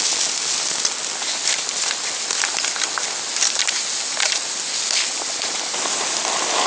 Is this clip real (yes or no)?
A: yes